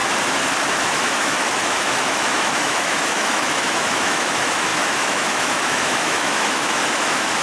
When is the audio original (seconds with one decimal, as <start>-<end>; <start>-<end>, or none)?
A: 0.0-0.7